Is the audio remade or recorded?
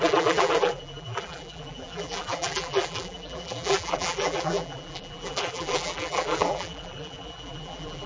remade